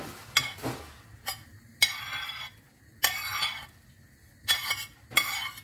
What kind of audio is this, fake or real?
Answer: real